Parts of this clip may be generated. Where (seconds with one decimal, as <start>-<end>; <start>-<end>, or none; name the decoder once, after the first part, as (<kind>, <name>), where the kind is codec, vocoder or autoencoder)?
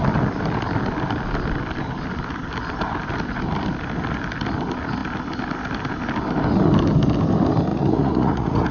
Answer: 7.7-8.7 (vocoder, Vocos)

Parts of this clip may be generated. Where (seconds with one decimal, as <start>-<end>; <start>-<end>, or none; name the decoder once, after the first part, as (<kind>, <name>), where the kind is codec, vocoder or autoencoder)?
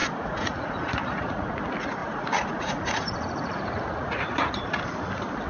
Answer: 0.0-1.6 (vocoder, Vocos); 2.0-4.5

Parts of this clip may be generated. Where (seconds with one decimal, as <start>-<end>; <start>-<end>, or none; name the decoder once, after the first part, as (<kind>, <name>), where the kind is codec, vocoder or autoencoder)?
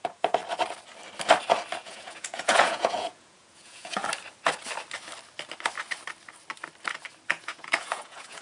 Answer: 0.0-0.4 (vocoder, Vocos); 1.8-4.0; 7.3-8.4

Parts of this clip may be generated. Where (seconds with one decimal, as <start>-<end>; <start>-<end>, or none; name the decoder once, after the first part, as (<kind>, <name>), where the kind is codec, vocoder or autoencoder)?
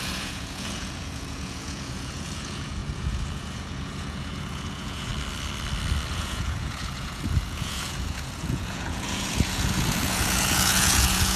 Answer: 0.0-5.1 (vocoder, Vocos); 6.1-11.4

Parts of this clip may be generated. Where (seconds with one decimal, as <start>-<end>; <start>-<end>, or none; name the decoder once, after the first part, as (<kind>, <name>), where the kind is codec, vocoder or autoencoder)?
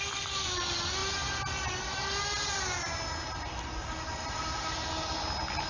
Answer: none